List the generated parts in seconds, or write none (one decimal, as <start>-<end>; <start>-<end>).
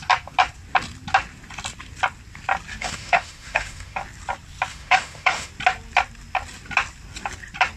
2.8-4.0; 4.7-5.5